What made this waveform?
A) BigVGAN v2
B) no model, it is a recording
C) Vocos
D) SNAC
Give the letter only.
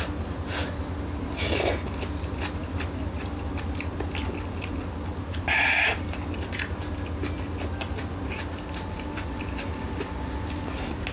B